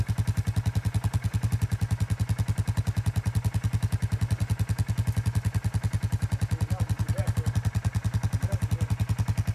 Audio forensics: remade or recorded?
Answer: recorded